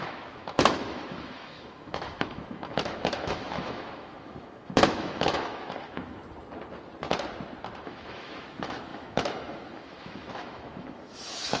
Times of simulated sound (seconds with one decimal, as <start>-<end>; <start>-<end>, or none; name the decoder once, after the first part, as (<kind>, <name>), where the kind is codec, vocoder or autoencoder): 0.0-6.2 (autoencoder, DAC-VAE); 7.8-11.6